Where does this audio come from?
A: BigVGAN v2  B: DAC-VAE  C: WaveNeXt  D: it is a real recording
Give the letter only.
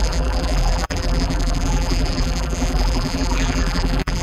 A